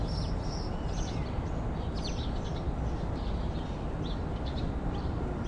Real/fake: real